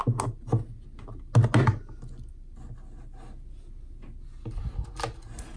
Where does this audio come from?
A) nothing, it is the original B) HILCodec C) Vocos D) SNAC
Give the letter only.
A